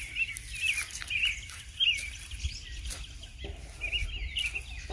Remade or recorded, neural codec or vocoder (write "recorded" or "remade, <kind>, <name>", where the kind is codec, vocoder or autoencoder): recorded